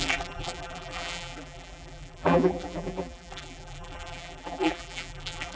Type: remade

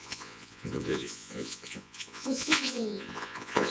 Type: remade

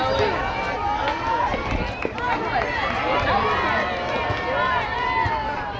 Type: recorded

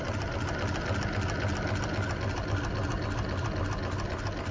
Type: recorded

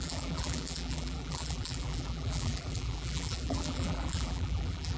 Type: remade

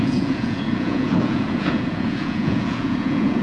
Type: remade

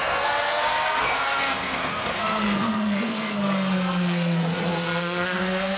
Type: remade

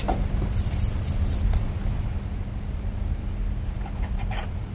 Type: recorded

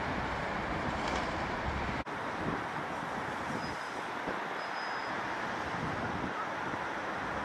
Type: recorded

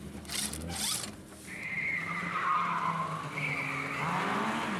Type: recorded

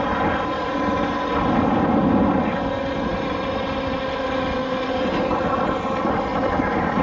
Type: recorded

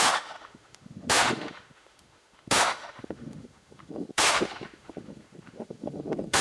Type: remade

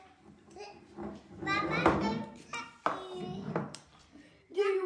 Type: remade